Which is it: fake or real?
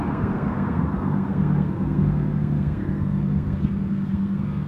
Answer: fake